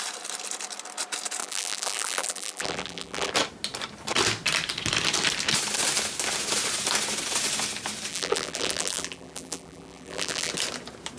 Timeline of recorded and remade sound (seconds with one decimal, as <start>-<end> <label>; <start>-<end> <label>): 0.0-1.4 recorded; 1.4-3.3 remade; 3.3-8.1 recorded; 8.1-10.5 remade; 10.5-11.2 recorded